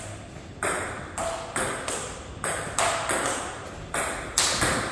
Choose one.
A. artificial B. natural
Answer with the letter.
B